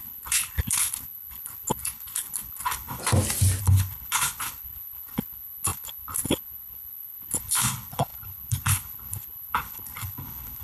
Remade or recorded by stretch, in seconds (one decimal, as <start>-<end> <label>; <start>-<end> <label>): 0.0-3.0 remade; 3.0-3.6 recorded; 3.6-10.6 remade